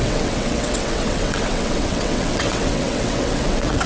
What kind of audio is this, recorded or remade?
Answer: remade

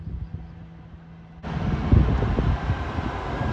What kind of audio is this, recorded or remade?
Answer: recorded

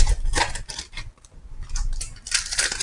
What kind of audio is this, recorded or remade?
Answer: remade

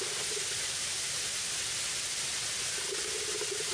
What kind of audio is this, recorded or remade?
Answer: recorded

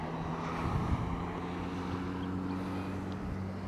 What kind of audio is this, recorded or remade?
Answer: recorded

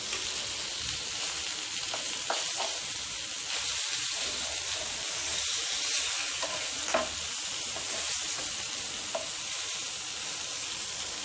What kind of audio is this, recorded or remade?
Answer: recorded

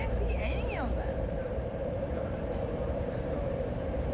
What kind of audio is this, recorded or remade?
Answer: remade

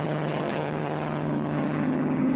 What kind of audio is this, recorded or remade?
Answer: remade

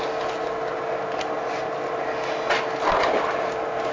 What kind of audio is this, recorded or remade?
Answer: recorded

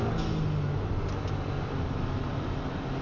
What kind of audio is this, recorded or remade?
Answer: recorded